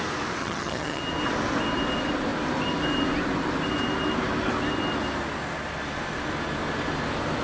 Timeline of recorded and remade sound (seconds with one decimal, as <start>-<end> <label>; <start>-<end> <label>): 0.0-0.4 recorded; 0.4-1.0 remade; 1.0-7.4 recorded